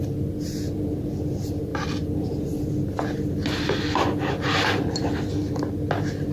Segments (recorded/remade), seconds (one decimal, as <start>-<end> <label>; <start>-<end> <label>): 0.0-6.3 recorded